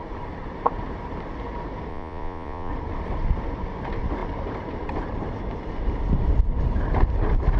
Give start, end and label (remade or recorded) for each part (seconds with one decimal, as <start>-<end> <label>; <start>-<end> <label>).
0.0-1.9 recorded; 1.9-2.7 remade; 2.7-7.6 recorded